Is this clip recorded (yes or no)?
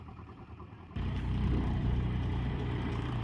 no